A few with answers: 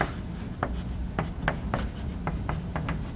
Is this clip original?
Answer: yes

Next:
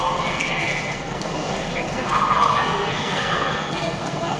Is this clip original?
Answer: no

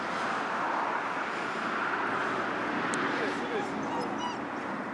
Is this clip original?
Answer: yes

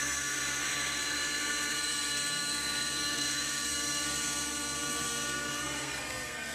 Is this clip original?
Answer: no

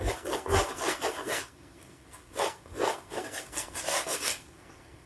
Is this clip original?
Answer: no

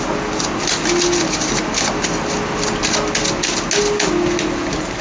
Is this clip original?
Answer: yes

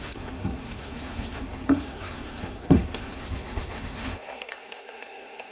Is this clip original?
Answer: no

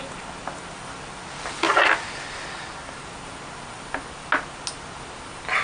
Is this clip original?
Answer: yes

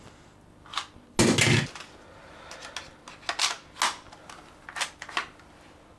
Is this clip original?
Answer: yes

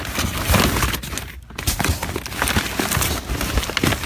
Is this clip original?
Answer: yes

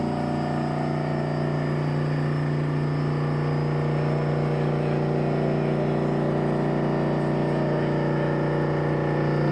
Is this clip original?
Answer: yes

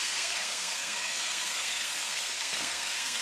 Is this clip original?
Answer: no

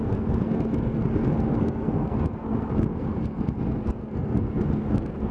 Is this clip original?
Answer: no